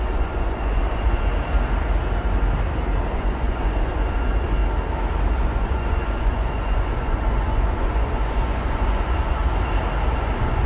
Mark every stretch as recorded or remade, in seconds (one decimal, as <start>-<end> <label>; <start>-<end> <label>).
0.0-1.3 remade; 1.3-3.1 recorded; 3.1-4.6 remade; 4.6-5.4 recorded; 5.4-9.4 remade; 9.4-10.1 recorded; 10.1-10.7 remade